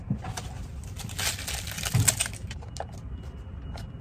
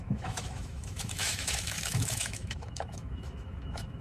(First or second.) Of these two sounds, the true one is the first